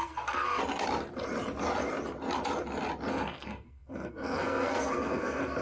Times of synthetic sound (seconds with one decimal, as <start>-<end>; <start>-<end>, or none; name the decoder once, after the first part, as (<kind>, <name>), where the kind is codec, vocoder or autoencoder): 0.0-0.6 (codec, SNAC); 3.1-5.6